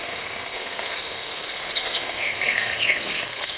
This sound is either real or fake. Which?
fake